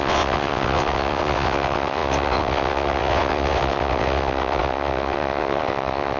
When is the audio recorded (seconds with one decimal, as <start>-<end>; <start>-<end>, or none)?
none